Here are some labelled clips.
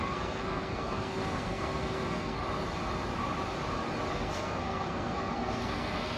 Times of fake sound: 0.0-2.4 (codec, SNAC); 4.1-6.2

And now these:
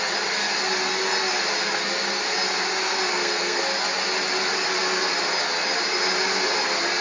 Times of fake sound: 3.1-3.6 (codec, SNAC)

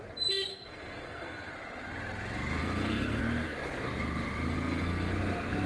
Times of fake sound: 0.5-1.5 (codec, SNAC); 2.6-3.2; 4.5-5.1

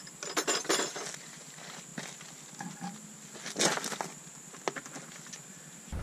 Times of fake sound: none

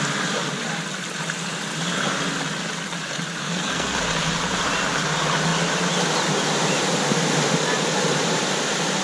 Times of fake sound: 3.4-4.0 (codec, SNAC)